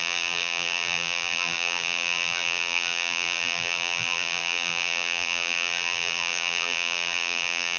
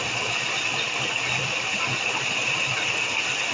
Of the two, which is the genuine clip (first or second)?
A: second